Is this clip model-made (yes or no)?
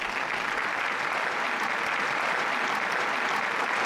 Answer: no